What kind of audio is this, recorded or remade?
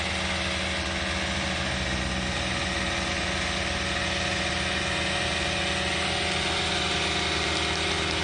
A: recorded